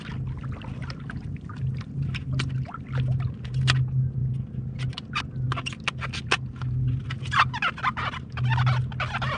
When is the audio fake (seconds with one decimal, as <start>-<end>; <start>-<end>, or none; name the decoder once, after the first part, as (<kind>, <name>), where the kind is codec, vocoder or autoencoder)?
0.8-2.1 (vocoder, BigVGAN v2)